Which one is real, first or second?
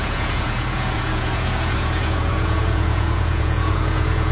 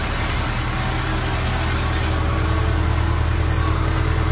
second